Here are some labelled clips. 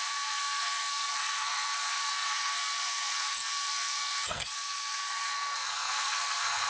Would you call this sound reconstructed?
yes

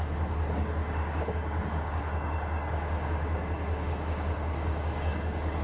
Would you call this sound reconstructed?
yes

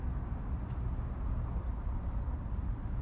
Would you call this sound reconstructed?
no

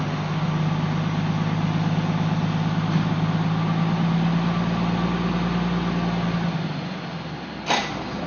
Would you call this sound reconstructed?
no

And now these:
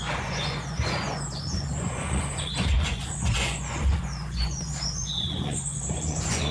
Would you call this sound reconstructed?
yes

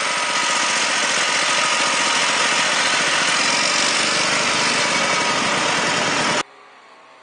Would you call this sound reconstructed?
no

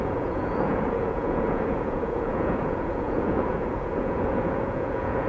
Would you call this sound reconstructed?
yes